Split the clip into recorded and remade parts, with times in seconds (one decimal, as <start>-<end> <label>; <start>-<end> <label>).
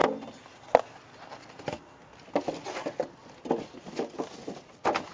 0.0-5.1 recorded